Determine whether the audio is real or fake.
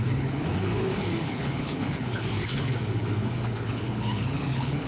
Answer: fake